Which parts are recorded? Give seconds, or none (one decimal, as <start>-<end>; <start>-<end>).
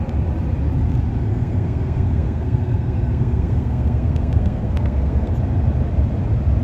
0.0-1.3; 5.3-6.6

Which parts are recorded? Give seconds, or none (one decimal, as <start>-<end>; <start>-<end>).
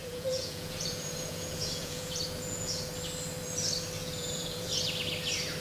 2.9-4.0; 4.8-5.6